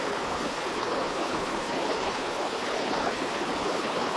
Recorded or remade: remade